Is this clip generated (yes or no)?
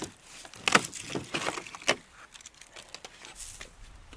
no